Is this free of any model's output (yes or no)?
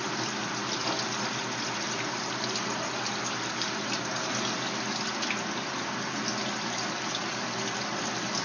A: yes